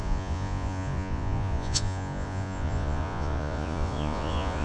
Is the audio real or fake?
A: fake